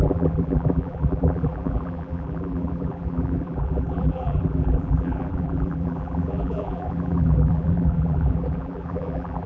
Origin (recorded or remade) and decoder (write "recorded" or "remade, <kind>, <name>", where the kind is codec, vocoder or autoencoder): remade, vocoder, BigVGAN v2